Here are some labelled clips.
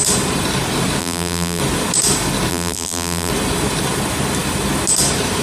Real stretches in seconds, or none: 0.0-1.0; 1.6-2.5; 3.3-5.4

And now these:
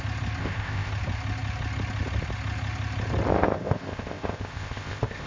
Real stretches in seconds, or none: 0.0-0.4; 0.9-3.3

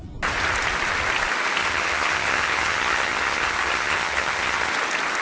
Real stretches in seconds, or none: 0.0-1.6; 4.7-5.2

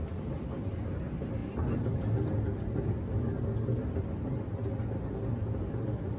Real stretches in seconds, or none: 0.0-6.2

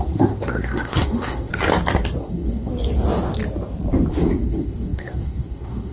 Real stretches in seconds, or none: 1.5-2.2; 2.7-4.1

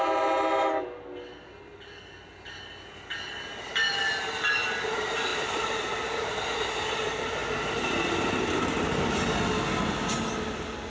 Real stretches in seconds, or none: 0.0-5.3; 6.4-10.9

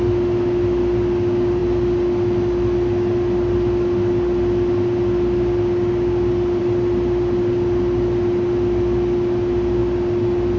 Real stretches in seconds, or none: 0.0-10.6